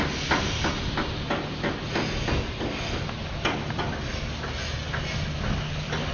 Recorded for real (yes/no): yes